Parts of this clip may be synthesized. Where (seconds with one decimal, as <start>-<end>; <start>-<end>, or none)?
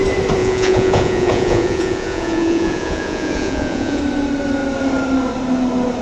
0.4-4.0